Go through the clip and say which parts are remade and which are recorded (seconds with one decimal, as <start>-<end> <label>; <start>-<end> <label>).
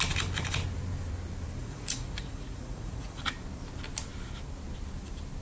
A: 0.0-1.6 recorded; 1.6-3.2 remade; 3.2-5.4 recorded